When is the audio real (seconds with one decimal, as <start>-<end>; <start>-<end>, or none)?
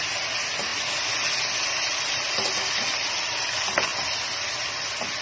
0.0-5.2